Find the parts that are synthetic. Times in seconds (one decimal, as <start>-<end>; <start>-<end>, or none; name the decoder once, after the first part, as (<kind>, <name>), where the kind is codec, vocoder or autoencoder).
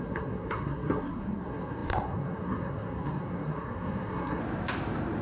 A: 0.0-4.4 (codec, SNAC)